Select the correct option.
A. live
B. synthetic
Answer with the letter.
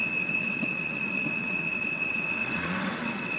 B